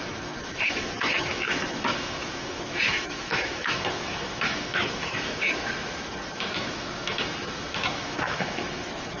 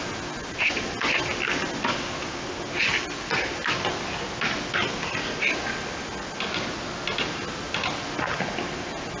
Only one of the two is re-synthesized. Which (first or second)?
first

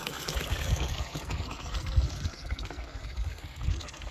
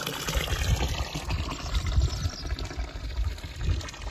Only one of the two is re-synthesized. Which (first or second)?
first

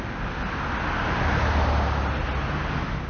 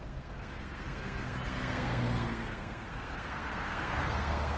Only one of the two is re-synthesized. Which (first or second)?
second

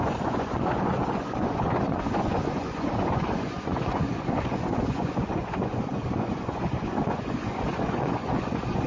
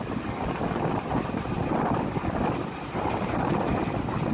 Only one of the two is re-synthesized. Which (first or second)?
first